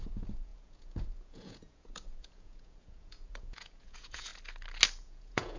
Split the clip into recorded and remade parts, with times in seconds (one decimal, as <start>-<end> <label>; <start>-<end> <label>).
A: 0.0-4.3 remade; 4.3-5.0 recorded; 5.0-5.6 remade